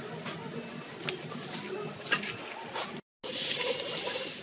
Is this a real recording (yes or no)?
yes